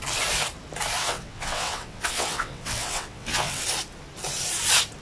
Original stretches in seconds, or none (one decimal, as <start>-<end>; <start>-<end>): 0.0-1.0; 3.6-5.0